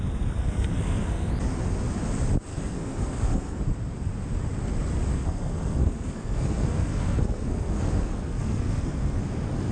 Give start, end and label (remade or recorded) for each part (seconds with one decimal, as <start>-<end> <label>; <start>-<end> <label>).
0.0-0.4 recorded; 0.4-1.3 remade; 1.3-2.5 recorded; 2.5-3.6 remade; 3.6-5.1 recorded; 5.1-9.2 remade; 9.2-9.7 recorded